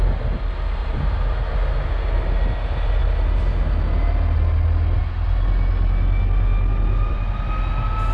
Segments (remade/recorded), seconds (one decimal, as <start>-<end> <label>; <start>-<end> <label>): 0.0-0.8 recorded; 0.8-1.4 remade; 1.4-8.1 recorded